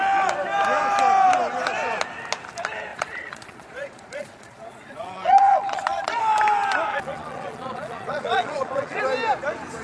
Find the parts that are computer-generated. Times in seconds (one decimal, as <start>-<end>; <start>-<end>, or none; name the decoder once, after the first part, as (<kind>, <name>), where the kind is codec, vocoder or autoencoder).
2.9-6.2 (vocoder, Vocos); 6.9-9.0